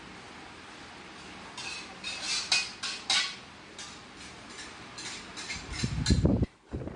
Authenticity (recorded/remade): recorded